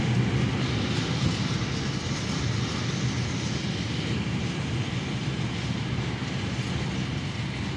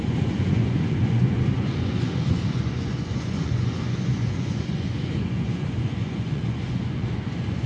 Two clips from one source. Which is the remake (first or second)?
second